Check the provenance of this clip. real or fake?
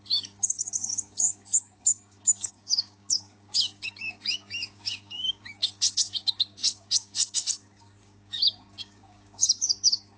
fake